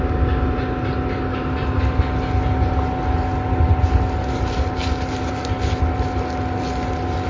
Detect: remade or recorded recorded